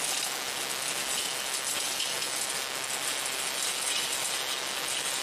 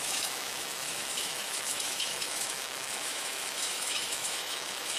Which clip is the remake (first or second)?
second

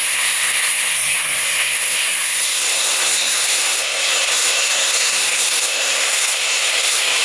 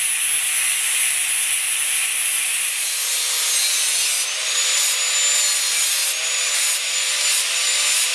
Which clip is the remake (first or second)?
first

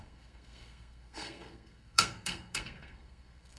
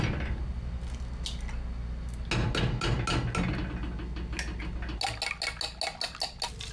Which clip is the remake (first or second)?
first